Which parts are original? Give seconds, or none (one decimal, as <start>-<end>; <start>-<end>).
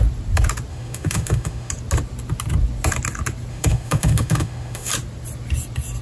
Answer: 0.0-0.7; 1.7-3.5; 4.9-6.0